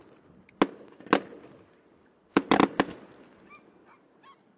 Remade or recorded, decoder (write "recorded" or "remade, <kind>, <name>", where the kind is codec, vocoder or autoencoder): recorded